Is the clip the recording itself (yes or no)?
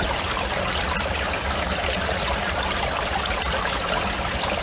yes